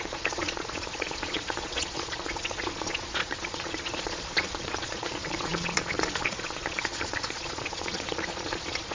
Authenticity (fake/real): fake